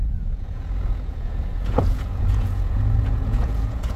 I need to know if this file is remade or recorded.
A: remade